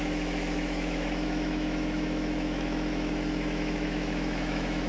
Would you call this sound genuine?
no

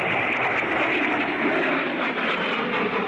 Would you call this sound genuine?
yes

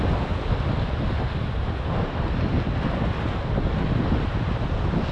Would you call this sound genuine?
yes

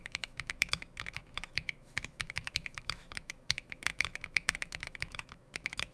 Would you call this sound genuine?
no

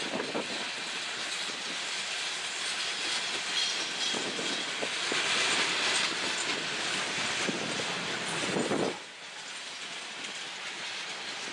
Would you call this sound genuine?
yes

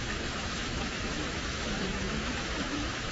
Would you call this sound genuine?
no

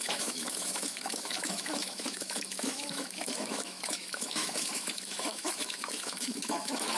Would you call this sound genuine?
no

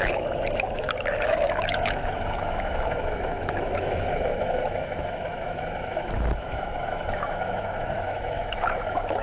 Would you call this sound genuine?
no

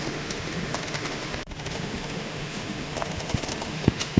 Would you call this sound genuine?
no